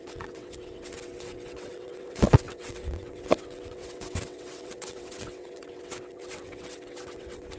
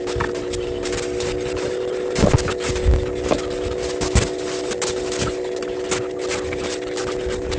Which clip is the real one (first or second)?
second